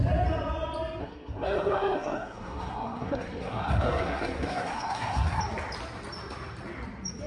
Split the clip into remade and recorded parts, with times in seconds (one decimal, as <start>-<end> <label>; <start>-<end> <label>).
0.0-1.0 recorded; 1.0-5.4 remade; 5.4-7.3 recorded